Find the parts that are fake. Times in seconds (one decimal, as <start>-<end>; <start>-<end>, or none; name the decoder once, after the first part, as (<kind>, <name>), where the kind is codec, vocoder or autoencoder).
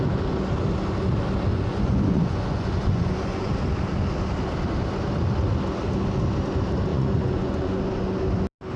1.5-3.5 (vocoder, Vocos); 6.9-7.8